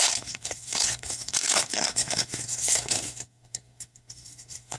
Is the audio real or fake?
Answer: fake